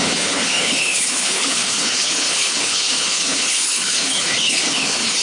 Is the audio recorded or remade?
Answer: remade